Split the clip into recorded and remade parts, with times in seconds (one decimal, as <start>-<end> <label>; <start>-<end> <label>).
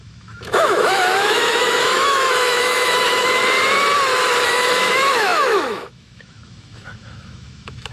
0.0-3.4 remade; 3.4-4.5 recorded; 4.5-7.9 remade